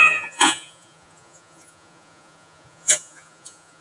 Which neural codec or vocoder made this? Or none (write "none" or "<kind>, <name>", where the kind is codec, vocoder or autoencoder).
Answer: vocoder, Vocos